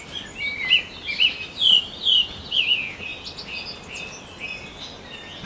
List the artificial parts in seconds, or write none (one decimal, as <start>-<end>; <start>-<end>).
none